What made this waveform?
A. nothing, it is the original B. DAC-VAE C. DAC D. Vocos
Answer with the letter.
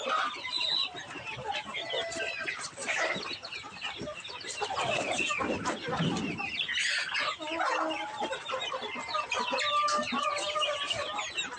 A